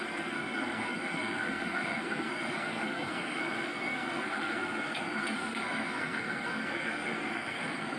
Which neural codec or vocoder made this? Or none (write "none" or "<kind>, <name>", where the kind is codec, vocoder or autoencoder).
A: codec, SNAC